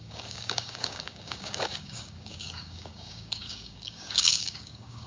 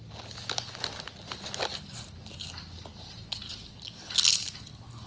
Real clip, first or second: second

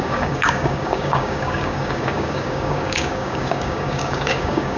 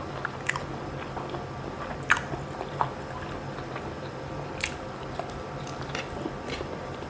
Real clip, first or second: second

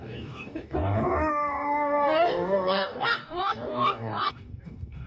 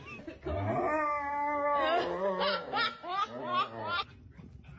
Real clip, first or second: second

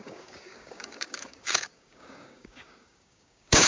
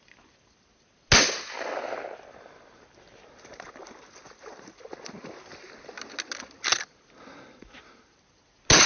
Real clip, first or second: second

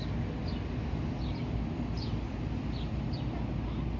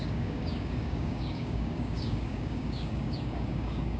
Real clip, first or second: first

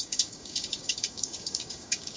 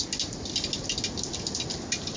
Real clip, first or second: second